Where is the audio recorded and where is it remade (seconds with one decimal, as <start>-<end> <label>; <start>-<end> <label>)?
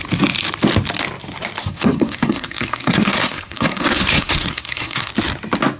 0.0-1.6 recorded; 1.6-5.1 remade; 5.1-5.8 recorded